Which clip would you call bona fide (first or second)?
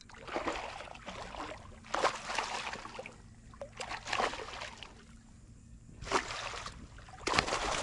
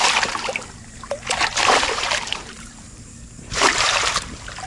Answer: first